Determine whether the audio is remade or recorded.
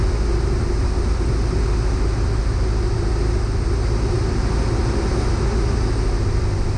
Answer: recorded